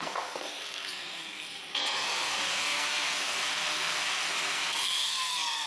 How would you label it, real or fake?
fake